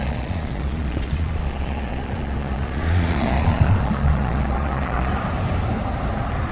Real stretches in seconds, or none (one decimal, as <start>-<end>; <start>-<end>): 5.1-6.5